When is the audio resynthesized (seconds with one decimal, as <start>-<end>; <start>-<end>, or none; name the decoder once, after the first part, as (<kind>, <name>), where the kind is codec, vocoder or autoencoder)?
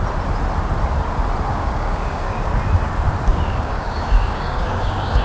1.5-2.5 (codec, DAC); 3.3-5.2